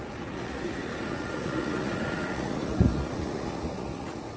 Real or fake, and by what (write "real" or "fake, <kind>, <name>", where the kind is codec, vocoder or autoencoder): fake, vocoder, Vocos